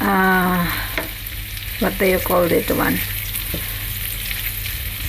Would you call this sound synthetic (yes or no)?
no